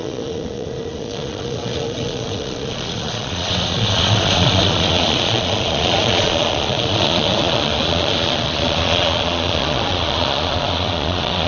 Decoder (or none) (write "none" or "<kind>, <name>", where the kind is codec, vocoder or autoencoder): vocoder, Vocos